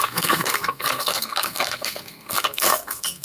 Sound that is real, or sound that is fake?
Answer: fake